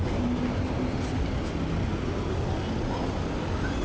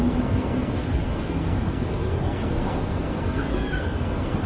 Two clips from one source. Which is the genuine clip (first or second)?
first